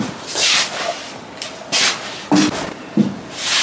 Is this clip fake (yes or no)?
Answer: no